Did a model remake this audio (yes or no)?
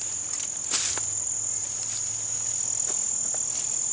no